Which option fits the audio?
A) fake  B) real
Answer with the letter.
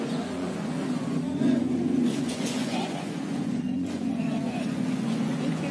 A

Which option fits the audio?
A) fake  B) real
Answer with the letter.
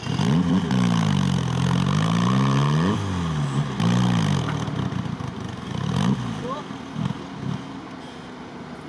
B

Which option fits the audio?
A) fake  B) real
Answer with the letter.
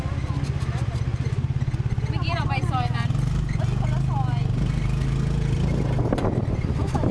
B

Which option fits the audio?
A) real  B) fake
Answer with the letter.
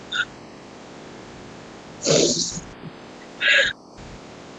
A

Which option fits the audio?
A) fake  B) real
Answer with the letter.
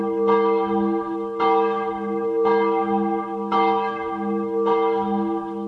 A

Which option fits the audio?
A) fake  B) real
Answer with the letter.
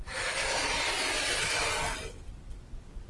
B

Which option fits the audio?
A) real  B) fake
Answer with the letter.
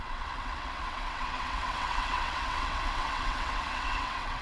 B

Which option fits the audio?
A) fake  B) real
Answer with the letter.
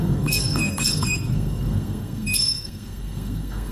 A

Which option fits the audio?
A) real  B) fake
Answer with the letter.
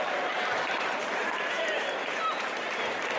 B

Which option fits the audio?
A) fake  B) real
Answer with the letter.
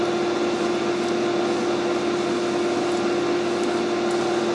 B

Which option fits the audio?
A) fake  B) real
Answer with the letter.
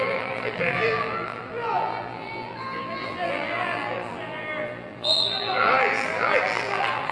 A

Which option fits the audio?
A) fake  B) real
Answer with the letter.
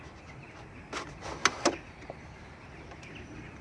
B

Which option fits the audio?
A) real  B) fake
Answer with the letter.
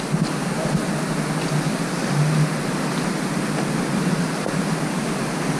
A